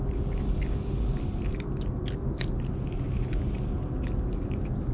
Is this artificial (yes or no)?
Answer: no